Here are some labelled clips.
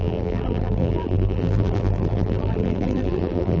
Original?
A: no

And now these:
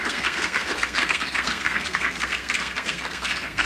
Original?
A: no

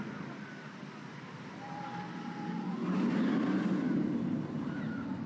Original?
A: yes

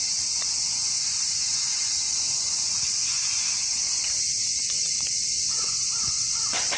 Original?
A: no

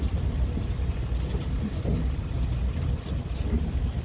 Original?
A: yes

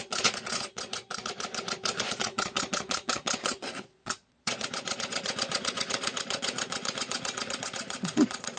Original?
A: no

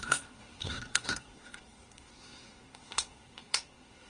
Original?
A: no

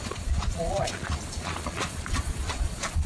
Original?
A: no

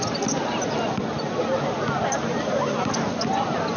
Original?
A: yes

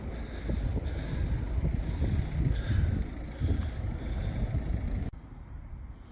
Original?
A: yes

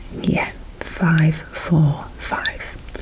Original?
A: yes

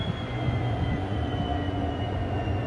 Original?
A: no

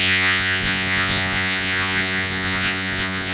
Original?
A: no